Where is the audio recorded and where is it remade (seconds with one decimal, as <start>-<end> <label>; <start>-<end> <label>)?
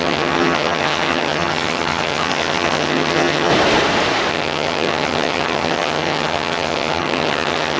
0.0-3.5 remade; 3.5-4.3 recorded; 4.3-7.8 remade